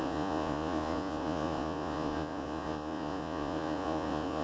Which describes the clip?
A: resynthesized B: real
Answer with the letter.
A